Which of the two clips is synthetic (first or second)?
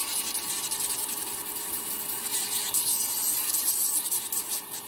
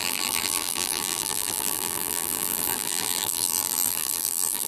second